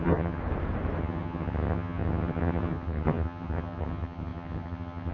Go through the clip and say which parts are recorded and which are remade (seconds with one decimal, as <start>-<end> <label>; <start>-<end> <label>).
0.0-0.4 remade; 0.4-1.0 recorded; 1.0-5.1 remade